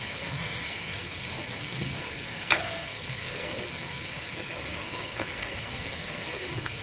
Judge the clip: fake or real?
fake